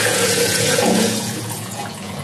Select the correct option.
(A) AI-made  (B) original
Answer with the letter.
A